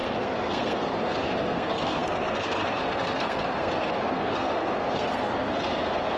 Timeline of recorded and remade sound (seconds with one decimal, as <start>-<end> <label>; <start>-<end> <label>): 0.0-6.2 remade

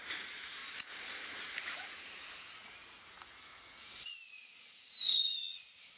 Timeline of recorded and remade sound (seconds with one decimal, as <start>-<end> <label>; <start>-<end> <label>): 0.0-6.0 remade

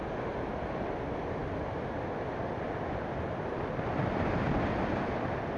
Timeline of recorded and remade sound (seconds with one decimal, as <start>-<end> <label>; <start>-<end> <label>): 0.0-5.6 recorded

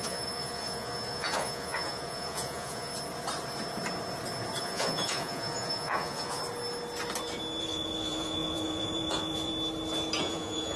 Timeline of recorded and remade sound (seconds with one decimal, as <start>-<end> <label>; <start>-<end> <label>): 0.0-2.9 remade; 2.9-4.6 recorded; 4.6-6.4 remade; 6.4-7.6 recorded; 7.6-9.5 remade; 9.5-10.2 recorded; 10.2-10.8 remade

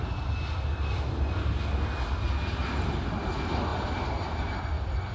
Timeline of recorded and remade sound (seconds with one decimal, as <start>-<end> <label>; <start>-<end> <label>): 0.0-5.1 recorded

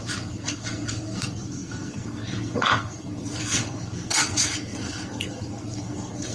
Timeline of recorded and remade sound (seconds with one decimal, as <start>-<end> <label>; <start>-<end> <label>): 0.0-6.3 remade

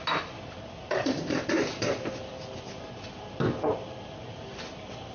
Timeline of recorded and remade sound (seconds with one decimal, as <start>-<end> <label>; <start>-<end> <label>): 0.0-5.1 recorded